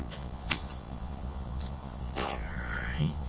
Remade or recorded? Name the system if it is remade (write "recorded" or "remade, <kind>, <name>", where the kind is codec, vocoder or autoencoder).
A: remade, vocoder, Vocos